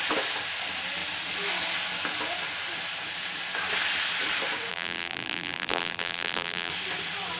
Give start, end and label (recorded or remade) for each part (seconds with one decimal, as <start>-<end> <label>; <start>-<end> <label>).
0.0-4.7 recorded; 4.7-6.7 remade; 6.7-7.4 recorded